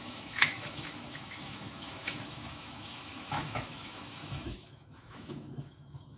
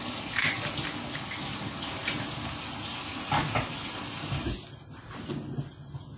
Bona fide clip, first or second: second